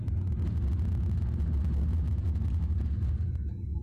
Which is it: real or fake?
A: real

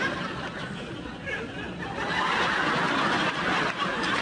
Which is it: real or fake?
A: real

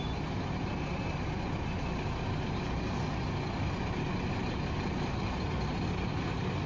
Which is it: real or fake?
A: real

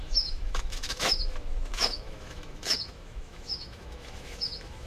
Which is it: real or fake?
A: fake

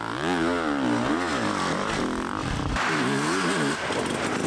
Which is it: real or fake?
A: real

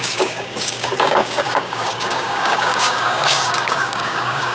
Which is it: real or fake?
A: fake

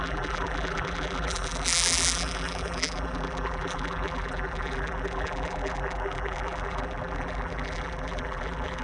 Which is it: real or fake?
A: fake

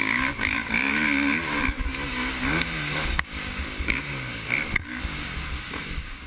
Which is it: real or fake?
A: fake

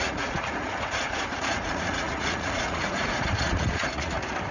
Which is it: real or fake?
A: fake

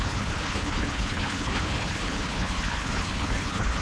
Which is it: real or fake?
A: fake